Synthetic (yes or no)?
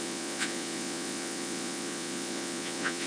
yes